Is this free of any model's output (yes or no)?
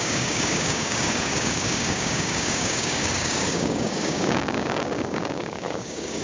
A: no